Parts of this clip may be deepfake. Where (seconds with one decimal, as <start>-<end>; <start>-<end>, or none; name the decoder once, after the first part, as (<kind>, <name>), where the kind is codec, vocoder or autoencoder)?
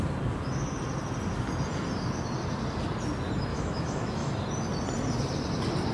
3.5-4.3 (autoencoder, DAC-VAE)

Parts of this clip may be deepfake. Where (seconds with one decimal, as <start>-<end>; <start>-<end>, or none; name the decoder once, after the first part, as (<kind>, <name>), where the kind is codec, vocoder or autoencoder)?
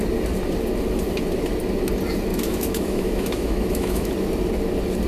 2.3-4.1 (autoencoder, DAC-VAE)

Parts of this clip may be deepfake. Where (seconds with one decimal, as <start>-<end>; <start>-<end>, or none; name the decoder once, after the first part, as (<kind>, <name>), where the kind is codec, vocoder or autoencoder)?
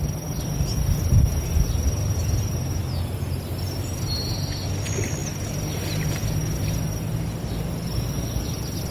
none